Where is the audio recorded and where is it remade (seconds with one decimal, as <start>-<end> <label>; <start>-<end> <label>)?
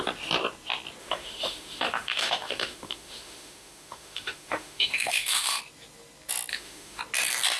0.0-1.0 recorded; 1.0-5.6 remade; 5.6-6.5 recorded; 6.5-7.0 remade; 7.0-7.6 recorded